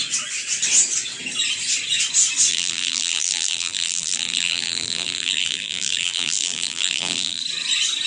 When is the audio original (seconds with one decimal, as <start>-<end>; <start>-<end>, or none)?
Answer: 0.0-2.5; 7.4-8.1